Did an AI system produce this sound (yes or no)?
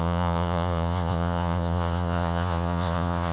yes